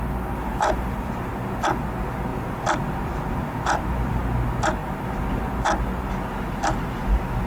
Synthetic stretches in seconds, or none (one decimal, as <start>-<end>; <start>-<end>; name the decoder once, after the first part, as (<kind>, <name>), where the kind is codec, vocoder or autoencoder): 0.5-1.3 (vocoder, BigVGAN v2); 2.3-4.2

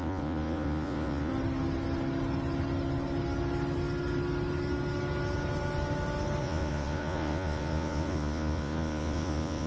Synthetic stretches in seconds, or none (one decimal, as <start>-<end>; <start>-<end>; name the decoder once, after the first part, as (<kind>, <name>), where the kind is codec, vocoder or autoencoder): 0.0-1.3 (vocoder, Vocos); 6.4-9.7

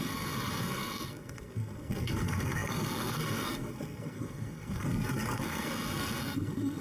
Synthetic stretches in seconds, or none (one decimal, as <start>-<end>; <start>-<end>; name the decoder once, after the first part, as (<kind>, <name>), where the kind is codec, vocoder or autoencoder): 0.0-6.8 (codec, SNAC)

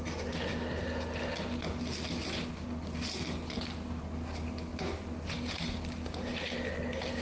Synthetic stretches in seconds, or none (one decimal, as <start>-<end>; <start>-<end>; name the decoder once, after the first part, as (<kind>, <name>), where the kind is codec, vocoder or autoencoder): 0.5-4.0 (vocoder, BigVGAN v2); 4.7-6.3

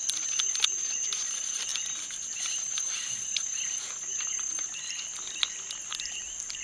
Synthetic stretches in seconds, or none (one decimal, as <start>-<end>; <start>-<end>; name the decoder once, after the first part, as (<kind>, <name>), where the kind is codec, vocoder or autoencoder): none

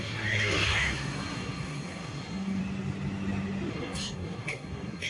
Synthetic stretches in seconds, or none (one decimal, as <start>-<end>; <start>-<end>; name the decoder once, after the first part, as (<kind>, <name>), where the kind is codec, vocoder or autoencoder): 0.0-2.6 (codec, SNAC); 3.7-5.1